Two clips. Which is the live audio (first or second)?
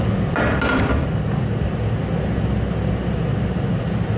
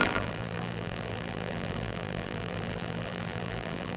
first